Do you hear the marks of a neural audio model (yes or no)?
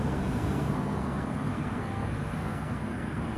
yes